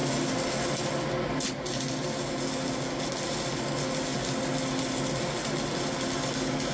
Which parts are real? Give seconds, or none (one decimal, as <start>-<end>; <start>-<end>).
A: 0.0-6.7